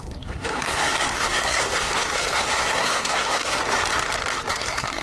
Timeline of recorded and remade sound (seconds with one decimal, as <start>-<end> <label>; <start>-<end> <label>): 0.0-3.6 remade; 3.6-4.5 recorded; 4.5-5.0 remade